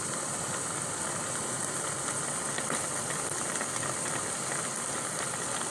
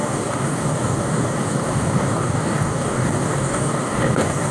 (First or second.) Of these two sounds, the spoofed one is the second